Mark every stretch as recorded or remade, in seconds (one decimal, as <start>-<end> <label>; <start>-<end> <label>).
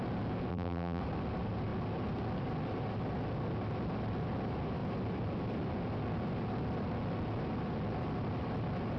0.0-0.5 recorded; 0.5-1.0 remade; 1.0-9.0 recorded